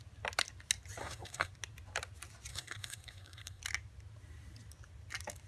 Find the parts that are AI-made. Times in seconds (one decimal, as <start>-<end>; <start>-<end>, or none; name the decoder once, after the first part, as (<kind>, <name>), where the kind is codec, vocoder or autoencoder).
1.0-1.5 (codec, SNAC); 2.5-3.6